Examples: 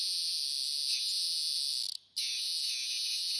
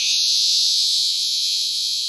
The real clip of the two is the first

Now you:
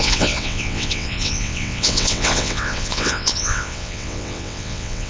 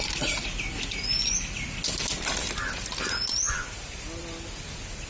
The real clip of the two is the second